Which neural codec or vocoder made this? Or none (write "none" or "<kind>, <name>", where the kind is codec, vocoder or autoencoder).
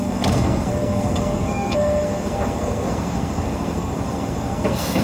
codec, SNAC